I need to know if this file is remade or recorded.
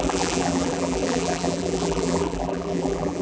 remade